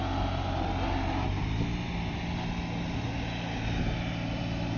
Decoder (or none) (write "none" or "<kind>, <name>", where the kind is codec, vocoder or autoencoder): none